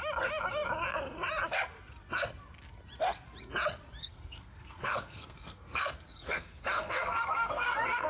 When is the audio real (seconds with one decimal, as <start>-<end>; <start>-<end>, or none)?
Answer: 0.0-4.0